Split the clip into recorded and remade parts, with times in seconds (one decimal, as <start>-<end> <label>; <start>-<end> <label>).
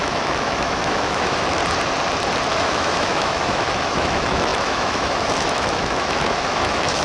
0.0-1.6 remade; 1.6-2.6 recorded; 2.6-7.0 remade